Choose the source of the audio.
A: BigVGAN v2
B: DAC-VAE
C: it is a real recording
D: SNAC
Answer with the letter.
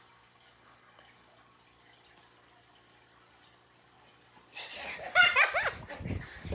C